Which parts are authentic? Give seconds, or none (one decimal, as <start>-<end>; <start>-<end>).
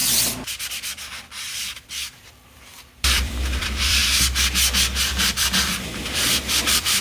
4.0-5.1